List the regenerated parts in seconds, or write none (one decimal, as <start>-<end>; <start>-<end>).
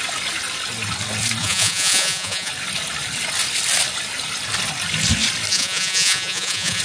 1.4-2.5; 5.5-6.8